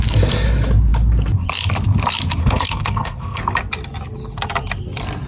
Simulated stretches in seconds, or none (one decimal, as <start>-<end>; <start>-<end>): 2.4-3.4